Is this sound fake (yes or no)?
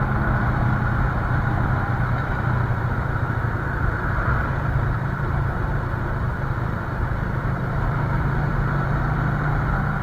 yes